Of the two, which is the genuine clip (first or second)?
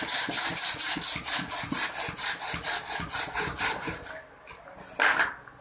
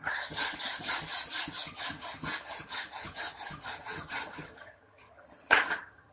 first